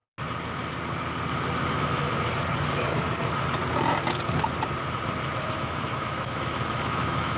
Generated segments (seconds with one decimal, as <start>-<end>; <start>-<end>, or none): 1.7-2.1; 5.4-7.4